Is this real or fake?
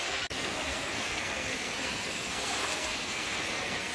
fake